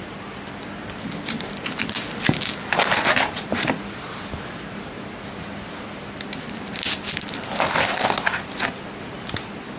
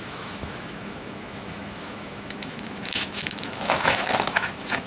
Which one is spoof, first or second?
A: second